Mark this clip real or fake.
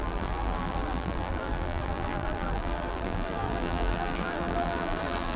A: fake